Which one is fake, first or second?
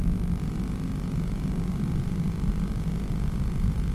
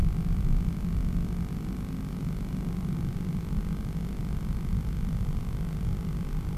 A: first